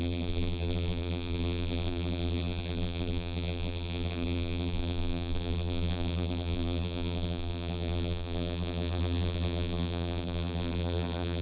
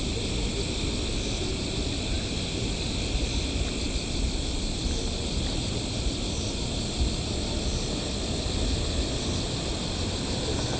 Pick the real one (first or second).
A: second